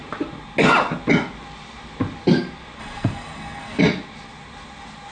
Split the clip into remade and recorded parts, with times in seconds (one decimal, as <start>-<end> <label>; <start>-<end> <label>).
0.0-2.8 recorded; 2.8-3.8 remade; 3.8-5.1 recorded